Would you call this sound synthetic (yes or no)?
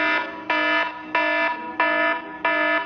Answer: no